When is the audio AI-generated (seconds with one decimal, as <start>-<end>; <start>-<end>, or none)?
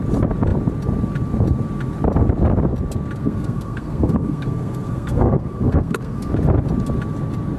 3.2-6.3